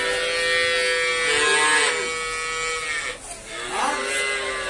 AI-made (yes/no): no